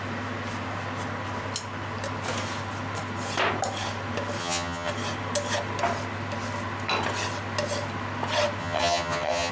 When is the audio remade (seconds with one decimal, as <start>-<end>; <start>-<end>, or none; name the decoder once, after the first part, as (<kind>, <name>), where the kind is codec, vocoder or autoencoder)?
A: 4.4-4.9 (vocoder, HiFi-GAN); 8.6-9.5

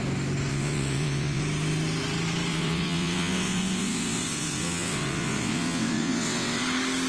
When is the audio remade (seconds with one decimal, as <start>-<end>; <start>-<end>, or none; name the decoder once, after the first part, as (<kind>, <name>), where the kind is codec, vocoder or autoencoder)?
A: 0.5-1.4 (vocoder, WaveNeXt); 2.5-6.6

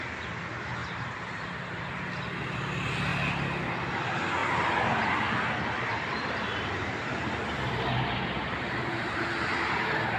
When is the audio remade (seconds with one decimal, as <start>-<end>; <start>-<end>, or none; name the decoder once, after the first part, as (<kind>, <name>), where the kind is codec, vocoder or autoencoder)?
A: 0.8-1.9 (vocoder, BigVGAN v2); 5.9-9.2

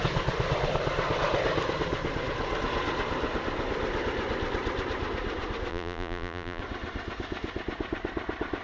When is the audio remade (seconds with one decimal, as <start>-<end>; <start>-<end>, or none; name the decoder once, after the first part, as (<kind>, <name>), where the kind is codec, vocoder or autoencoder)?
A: 5.7-6.6 (vocoder, BigVGAN v2)

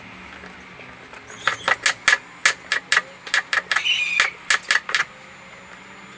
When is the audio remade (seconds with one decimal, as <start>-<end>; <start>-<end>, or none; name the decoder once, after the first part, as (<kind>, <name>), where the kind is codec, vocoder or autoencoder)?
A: none

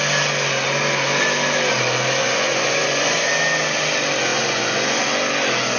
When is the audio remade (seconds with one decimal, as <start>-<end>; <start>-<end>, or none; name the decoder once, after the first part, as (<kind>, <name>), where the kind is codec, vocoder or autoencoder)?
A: 2.2-3.3 (vocoder, Vocos); 4.3-5.0

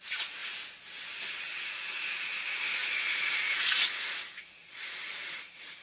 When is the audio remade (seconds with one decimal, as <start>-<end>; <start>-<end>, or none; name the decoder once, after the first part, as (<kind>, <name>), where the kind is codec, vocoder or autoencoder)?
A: 0.0-0.4 (vocoder, Vocos); 1.4-5.8

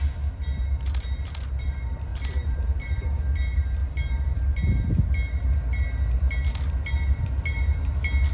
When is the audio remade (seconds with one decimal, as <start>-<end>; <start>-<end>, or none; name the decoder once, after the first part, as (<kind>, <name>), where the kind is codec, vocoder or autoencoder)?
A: 2.1-3.2 (vocoder, BigVGAN v2)